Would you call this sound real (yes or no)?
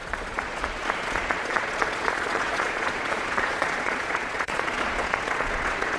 no